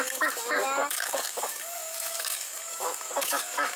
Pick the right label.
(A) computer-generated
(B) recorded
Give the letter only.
A